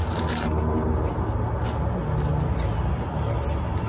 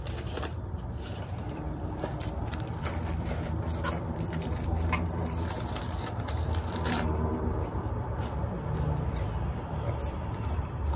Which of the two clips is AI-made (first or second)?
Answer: second